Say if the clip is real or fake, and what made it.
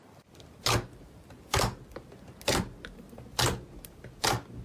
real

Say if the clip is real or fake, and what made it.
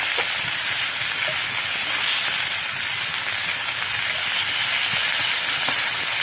real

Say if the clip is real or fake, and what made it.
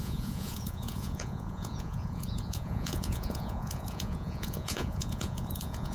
fake, vocoder, Vocos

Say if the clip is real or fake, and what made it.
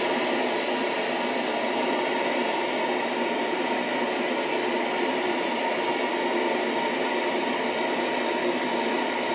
real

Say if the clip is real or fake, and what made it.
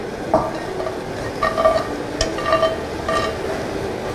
real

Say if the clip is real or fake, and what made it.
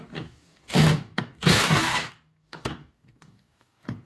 fake, codec, DAC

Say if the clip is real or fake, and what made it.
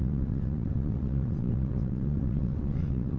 fake, vocoder, WaveNeXt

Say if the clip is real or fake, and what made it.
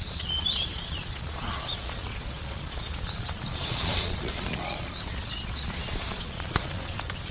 fake, vocoder, Vocos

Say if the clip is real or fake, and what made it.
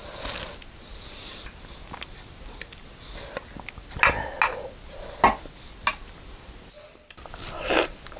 real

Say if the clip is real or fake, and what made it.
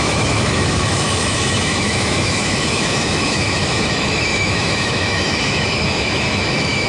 fake, autoencoder, DAC-VAE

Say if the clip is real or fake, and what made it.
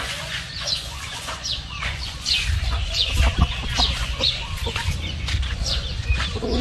fake, vocoder, Vocos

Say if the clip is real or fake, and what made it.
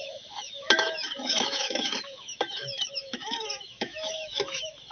fake, autoencoder, DAC-VAE